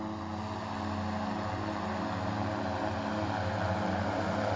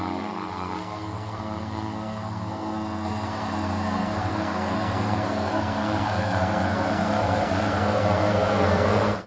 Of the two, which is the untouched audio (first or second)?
first